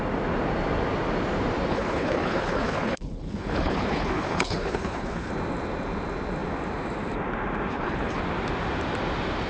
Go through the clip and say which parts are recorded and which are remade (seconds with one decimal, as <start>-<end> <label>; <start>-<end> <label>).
0.0-1.7 recorded; 1.7-5.3 remade; 5.3-7.7 recorded; 7.7-8.2 remade; 8.2-9.5 recorded